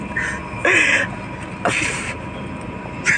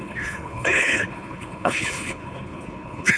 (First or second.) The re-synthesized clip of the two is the second